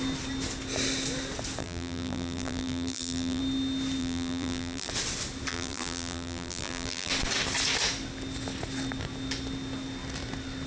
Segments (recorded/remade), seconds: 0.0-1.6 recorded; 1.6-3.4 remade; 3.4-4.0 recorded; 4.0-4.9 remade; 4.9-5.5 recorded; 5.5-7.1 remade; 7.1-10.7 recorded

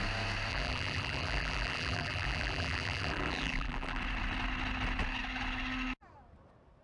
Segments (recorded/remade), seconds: 0.0-0.5 recorded; 0.5-4.0 remade; 4.0-6.8 recorded